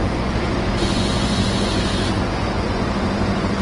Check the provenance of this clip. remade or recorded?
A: remade